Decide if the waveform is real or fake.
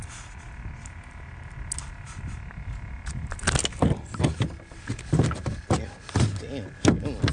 real